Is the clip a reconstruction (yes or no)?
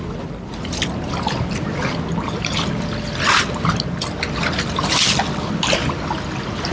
no